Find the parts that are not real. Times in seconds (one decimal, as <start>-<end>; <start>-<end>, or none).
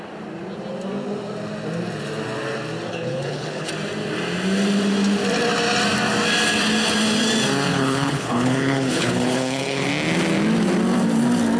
2.9-3.7; 7.7-9.9